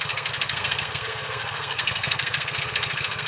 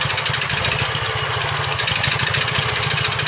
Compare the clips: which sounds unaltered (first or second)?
second